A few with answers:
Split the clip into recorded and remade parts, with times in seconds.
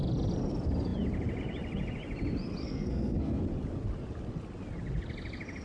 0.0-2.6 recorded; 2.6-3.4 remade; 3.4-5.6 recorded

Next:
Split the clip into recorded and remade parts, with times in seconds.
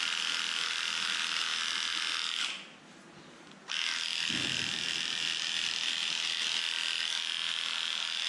0.0-8.3 recorded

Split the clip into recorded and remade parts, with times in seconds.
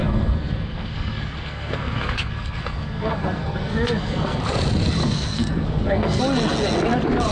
0.0-4.4 remade; 4.4-5.0 recorded; 5.0-6.2 remade; 6.2-7.3 recorded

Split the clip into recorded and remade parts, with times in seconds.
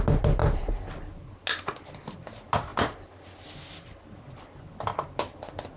0.0-5.8 recorded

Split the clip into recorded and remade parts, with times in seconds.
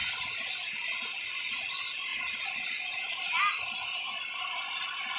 0.0-2.1 recorded; 2.1-3.4 remade; 3.4-5.2 recorded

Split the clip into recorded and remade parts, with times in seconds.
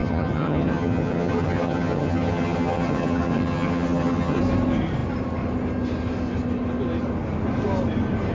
0.0-4.4 remade; 4.4-8.3 recorded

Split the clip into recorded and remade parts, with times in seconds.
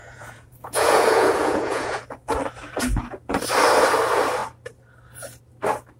0.0-2.0 remade; 2.0-6.0 recorded